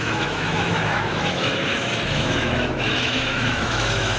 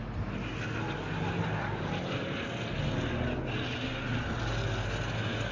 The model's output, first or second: first